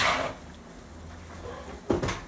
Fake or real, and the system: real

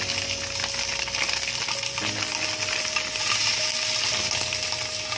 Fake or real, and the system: real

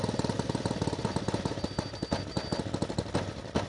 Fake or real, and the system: real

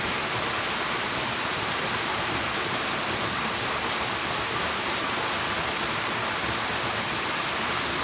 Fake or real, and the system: real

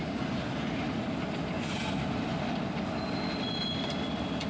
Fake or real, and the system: real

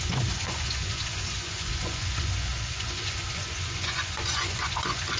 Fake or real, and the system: fake, vocoder, Vocos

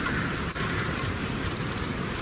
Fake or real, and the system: fake, vocoder, BigVGAN v2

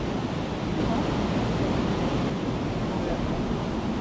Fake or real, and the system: real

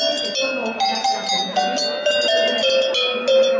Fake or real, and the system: real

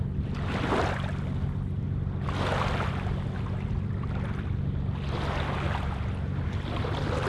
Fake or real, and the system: real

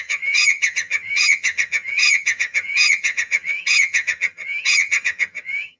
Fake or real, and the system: fake, vocoder, HiFi-GAN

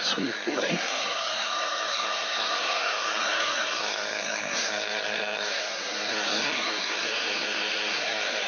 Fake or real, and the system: fake, codec, SNAC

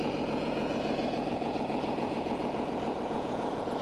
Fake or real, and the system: fake, vocoder, Vocos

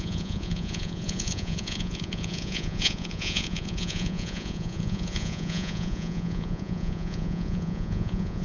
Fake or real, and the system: fake, vocoder, Vocos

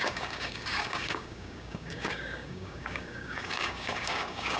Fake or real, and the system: fake, codec, DAC